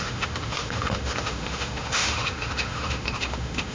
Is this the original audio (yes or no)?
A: no